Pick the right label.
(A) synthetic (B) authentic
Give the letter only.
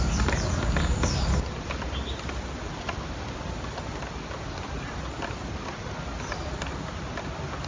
B